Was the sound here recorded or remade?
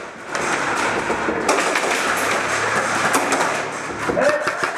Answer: recorded